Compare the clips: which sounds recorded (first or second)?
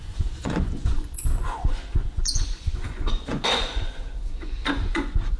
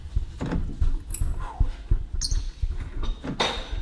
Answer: second